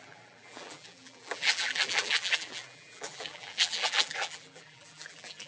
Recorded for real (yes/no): no